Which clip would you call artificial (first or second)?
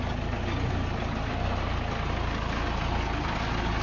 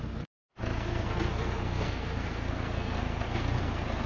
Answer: second